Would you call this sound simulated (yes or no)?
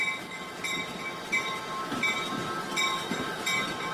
no